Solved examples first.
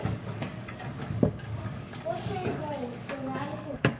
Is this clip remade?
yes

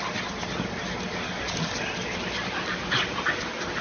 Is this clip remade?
no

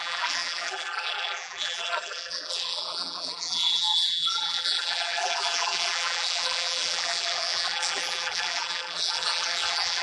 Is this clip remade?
yes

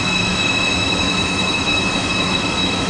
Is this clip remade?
yes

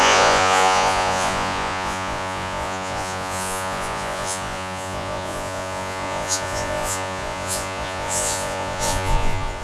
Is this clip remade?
yes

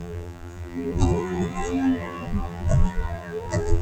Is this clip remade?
yes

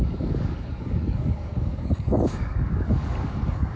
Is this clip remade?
yes